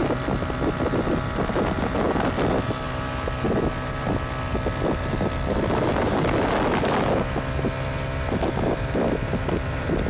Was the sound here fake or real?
real